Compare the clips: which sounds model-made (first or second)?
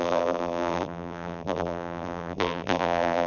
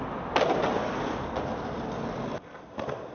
first